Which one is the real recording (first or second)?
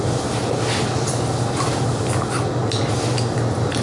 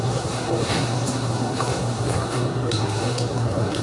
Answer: first